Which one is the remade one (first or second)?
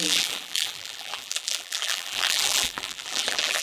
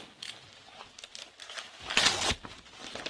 first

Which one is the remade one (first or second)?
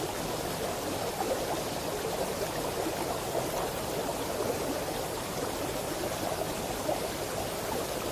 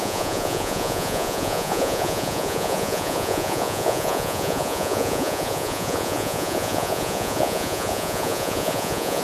second